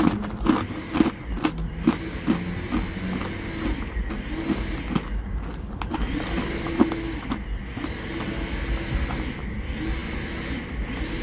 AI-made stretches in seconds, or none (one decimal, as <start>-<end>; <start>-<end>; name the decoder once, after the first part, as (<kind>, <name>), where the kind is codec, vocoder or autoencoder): none